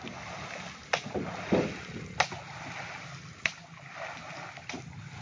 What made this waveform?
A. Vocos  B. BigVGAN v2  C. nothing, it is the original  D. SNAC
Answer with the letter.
C